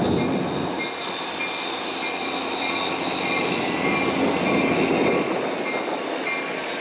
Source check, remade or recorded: recorded